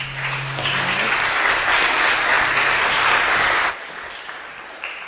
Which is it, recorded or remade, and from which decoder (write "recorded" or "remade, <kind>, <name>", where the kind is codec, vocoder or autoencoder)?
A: recorded